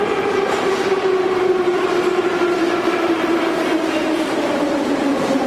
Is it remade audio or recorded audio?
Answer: remade